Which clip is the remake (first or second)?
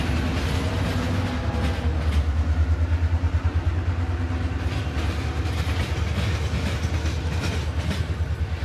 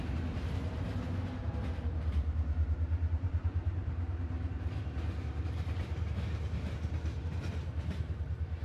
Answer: second